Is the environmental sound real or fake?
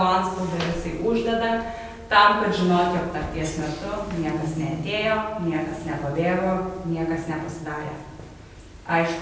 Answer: real